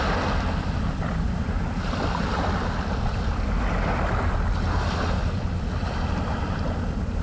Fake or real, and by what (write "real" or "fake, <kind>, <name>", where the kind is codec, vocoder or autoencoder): fake, vocoder, BigVGAN v2